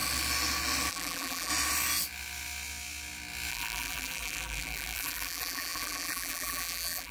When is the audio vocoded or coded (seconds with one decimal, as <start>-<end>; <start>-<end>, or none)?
0.9-1.5; 3.5-7.1